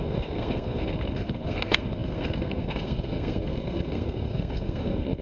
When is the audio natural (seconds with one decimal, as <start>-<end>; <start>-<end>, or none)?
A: none